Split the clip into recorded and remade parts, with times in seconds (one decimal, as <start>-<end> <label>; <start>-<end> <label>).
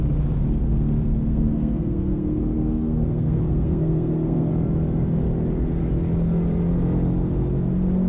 0.0-0.6 recorded; 0.6-4.5 remade; 4.5-8.1 recorded